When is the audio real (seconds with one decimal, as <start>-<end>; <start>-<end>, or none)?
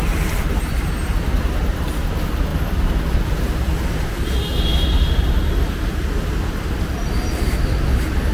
0.0-8.3